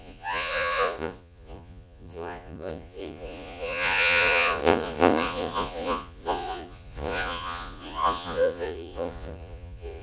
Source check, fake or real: fake